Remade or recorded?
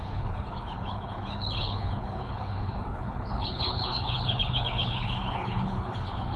remade